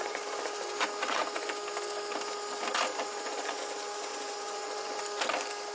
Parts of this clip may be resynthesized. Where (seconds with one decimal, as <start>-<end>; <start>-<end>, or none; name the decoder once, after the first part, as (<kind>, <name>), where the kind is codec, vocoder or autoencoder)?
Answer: 2.9-3.6 (vocoder, Vocos); 4.1-5.0